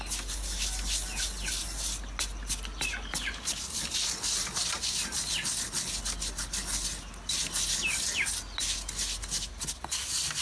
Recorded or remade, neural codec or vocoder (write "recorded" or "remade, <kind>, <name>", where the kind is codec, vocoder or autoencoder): recorded